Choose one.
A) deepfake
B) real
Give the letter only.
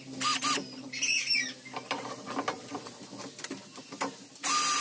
B